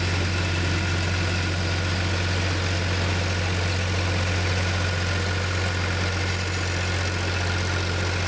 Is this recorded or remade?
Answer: recorded